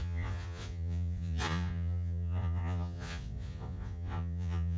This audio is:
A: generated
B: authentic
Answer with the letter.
A